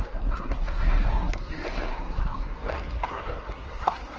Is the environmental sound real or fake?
fake